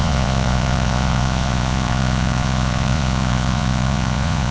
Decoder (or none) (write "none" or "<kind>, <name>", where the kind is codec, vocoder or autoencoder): vocoder, Vocos